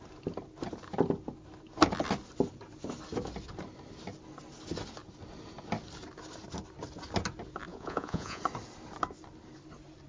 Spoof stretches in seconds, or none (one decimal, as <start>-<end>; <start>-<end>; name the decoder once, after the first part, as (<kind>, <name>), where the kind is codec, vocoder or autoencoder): 7.7-8.4 (vocoder, Vocos)